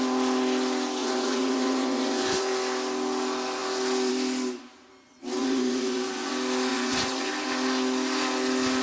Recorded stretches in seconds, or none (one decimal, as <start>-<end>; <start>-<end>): 0.0-1.0; 2.4-5.4; 6.3-6.7; 7.3-8.8